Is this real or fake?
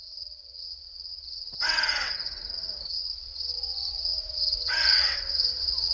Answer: fake